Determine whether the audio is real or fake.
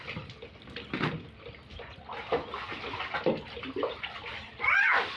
real